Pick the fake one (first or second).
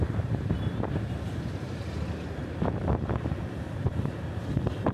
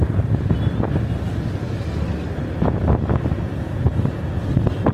first